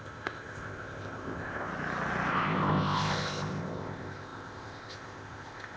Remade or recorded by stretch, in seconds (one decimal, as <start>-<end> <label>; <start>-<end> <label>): 0.0-1.7 remade; 1.7-2.3 recorded; 2.3-5.8 remade